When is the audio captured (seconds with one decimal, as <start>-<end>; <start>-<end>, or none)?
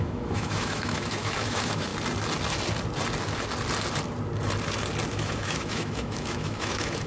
1.9-5.1